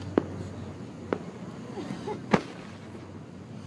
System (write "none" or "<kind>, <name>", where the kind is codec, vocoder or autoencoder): none